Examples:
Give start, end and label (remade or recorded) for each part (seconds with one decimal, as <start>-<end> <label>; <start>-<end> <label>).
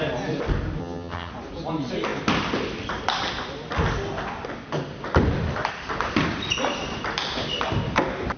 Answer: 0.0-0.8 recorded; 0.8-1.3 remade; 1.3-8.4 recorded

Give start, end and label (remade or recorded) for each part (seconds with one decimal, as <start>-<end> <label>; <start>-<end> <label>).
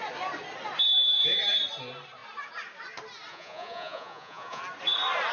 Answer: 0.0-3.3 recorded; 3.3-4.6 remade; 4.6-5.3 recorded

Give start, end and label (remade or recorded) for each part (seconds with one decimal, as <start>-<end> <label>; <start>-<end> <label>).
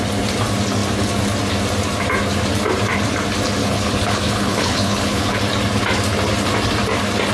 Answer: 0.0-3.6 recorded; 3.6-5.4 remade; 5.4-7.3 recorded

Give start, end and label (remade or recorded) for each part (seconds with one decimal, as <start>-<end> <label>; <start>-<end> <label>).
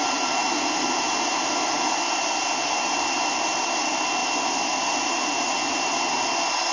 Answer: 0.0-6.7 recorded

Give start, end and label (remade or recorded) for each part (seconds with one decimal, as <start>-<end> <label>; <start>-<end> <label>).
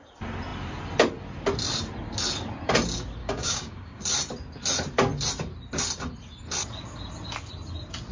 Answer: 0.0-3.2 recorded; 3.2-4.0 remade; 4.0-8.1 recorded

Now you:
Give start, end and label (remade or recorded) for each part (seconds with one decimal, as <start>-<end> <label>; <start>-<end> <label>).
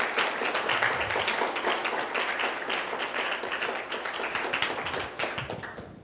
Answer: 0.0-6.0 recorded